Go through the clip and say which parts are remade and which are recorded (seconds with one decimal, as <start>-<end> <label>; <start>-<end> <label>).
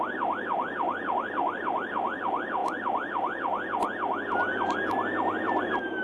0.0-2.6 remade; 2.6-5.6 recorded; 5.6-6.0 remade